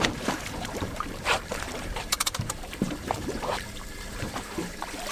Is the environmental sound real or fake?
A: fake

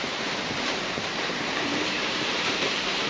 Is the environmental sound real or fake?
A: fake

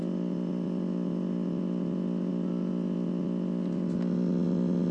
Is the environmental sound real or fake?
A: real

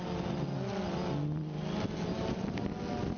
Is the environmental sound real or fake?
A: real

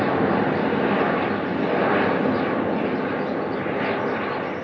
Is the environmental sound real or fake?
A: real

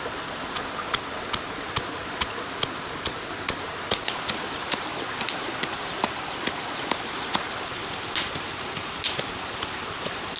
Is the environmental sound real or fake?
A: real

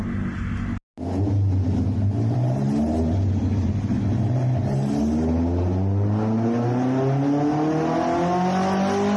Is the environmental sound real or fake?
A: real